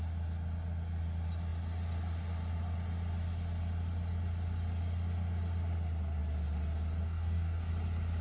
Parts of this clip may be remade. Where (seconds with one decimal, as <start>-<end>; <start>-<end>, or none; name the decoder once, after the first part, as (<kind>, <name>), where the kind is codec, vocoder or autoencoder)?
7.0-7.7 (codec, DAC)